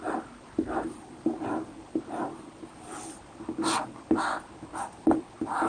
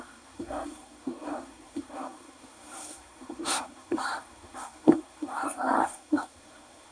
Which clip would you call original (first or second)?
first